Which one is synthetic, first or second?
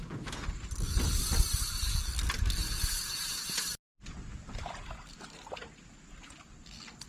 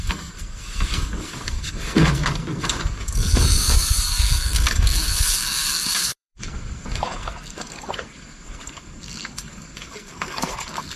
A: second